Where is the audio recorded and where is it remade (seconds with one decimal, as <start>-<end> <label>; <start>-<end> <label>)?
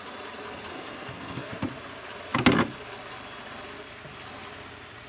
0.0-0.7 recorded; 0.7-1.5 remade; 1.5-5.1 recorded